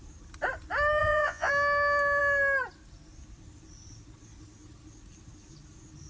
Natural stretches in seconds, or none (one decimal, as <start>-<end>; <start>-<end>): 0.0-1.0; 1.5-6.1